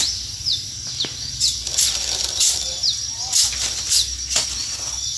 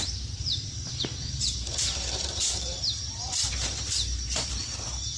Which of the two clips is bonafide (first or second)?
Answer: first